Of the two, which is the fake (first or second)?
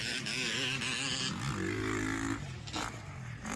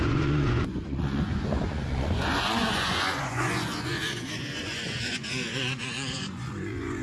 second